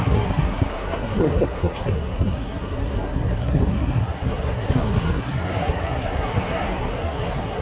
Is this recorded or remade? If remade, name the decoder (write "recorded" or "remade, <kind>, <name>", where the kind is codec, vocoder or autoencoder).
remade, codec, SNAC